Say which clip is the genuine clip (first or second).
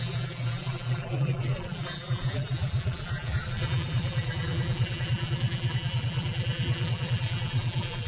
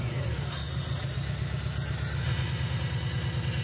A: second